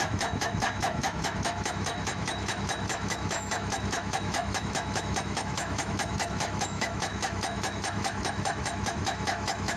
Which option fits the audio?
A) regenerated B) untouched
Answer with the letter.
A